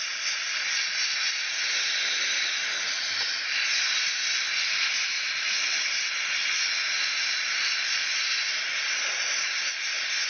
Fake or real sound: real